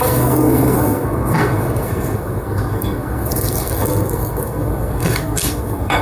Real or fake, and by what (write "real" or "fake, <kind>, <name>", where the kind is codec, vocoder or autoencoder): fake, codec, SNAC